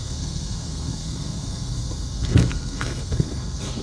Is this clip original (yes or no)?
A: no